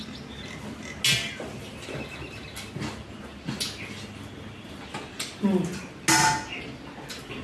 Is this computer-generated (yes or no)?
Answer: no